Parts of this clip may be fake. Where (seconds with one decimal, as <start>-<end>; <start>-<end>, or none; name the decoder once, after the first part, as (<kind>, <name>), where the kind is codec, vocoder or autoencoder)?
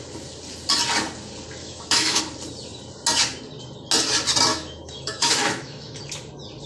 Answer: 1.6-2.2 (autoencoder, DAC-VAE); 4.5-6.0